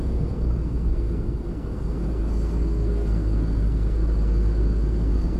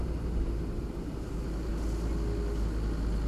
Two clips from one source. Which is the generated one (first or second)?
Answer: first